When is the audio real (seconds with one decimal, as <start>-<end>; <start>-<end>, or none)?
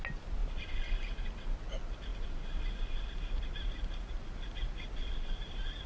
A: 0.0-5.9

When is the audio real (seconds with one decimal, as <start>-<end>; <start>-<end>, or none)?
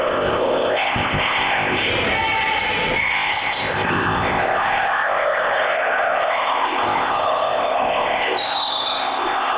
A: 1.9-3.0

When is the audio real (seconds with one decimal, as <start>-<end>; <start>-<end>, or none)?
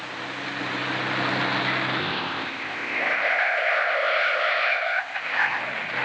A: 0.0-2.0; 5.6-6.0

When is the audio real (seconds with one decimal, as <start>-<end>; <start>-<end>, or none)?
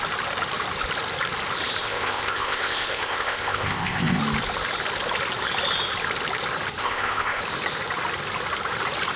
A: 0.0-1.8; 4.2-6.8; 7.4-9.2